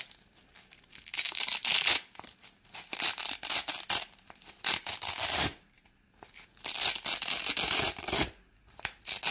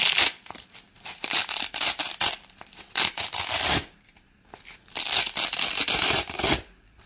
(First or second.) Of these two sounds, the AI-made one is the second